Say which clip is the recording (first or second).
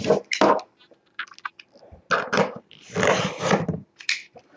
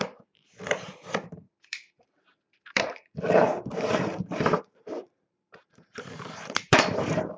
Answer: first